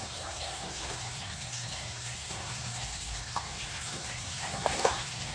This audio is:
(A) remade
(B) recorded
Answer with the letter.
A